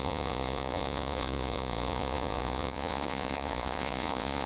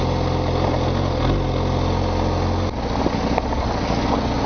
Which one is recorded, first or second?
second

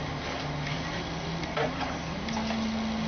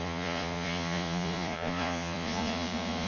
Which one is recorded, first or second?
first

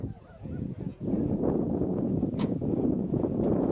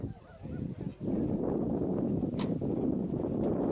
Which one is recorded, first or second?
second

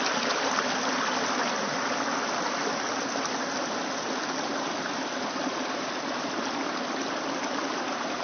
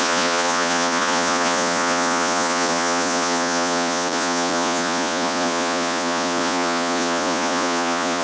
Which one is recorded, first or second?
first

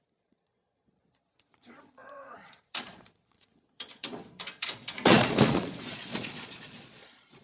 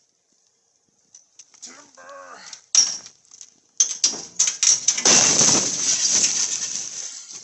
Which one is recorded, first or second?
second